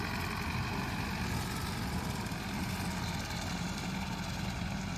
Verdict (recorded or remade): recorded